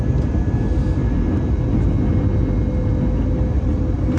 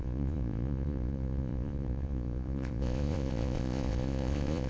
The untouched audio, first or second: first